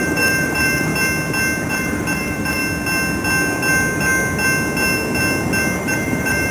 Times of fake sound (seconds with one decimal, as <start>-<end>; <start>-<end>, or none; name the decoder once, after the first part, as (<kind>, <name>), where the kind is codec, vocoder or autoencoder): 0.0-0.9 (vocoder, BigVGAN v2); 1.7-2.6; 5.8-6.5